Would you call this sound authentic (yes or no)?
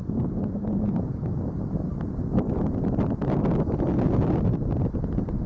yes